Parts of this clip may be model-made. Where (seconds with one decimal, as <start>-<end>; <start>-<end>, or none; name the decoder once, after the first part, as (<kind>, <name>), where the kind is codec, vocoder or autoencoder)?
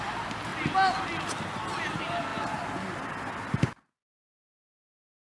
none